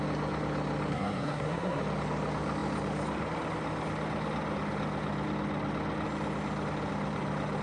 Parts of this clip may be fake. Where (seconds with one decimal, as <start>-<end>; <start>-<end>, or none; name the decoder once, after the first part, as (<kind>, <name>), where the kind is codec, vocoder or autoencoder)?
0.9-1.8 (codec, SNAC)

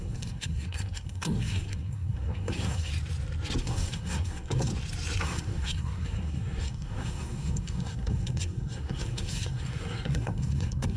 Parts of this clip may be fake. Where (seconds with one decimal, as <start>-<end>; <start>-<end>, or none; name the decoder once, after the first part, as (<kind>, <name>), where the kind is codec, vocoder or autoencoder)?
0.0-2.9 (codec, SNAC); 3.6-4.7; 5.2-11.0